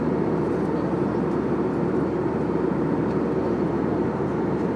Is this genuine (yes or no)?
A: yes